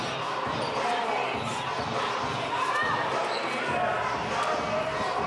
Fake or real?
real